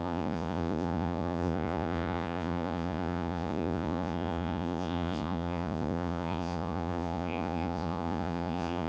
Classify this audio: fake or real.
fake